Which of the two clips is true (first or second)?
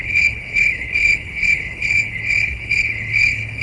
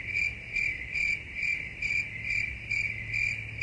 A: second